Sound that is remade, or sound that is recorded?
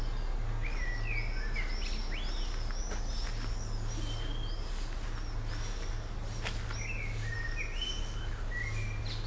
recorded